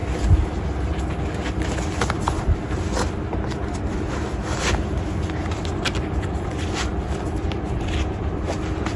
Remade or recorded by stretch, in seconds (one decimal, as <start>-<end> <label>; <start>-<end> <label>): 0.0-9.0 recorded